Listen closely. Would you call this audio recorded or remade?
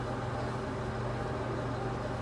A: recorded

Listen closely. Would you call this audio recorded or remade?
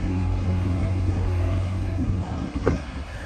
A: remade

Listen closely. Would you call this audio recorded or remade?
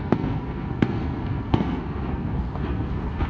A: remade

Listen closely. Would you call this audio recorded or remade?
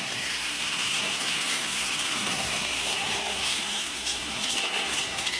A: remade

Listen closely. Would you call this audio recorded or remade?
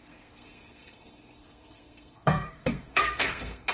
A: remade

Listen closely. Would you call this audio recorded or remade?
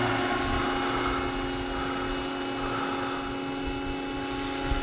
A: recorded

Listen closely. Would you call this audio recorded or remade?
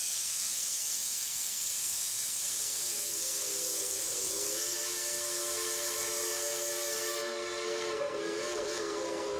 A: remade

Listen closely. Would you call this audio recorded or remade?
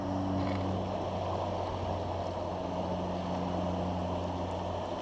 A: recorded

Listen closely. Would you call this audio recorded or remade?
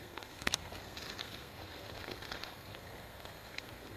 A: remade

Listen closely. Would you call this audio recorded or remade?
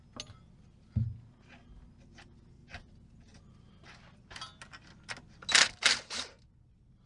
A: recorded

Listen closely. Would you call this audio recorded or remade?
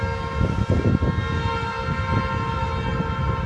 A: recorded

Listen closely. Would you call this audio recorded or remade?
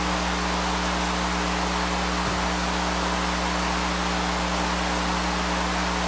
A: recorded